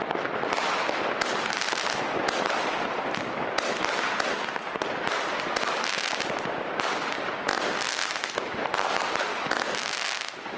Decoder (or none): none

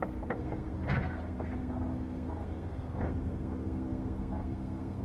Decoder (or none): codec, SNAC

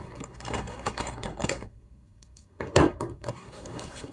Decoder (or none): codec, SNAC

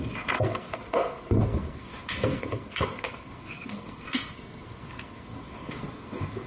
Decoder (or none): codec, SNAC